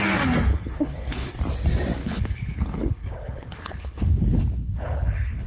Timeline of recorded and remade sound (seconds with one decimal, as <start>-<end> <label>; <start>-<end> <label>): 0.0-0.5 recorded; 0.5-1.3 remade; 1.3-2.0 recorded; 2.0-5.5 remade